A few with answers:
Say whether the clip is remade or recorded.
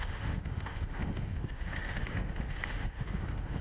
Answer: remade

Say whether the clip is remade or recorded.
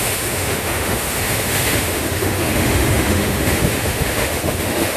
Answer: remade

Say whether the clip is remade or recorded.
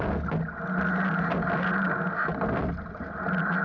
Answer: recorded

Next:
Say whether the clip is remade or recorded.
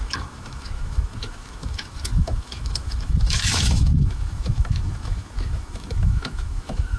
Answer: remade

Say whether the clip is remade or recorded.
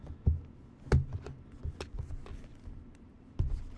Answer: recorded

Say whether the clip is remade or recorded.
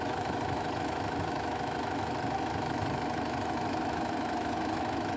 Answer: remade